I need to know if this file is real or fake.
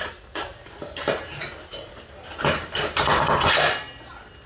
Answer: real